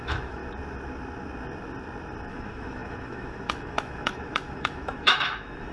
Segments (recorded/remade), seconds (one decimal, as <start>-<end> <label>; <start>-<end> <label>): 0.0-0.4 remade; 0.4-2.3 recorded; 2.3-5.7 remade